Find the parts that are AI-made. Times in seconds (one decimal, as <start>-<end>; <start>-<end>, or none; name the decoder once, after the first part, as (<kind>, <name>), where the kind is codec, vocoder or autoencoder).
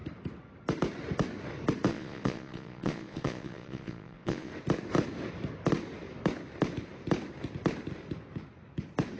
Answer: 1.9-4.5 (vocoder, Vocos)